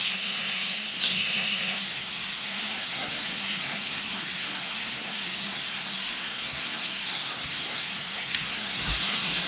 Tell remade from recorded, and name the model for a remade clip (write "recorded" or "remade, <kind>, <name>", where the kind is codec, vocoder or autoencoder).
remade, codec, SNAC